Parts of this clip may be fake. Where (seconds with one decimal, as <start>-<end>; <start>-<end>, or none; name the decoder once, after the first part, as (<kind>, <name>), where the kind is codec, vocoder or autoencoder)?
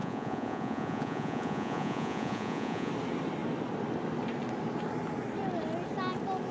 0.0-2.9 (vocoder, Vocos)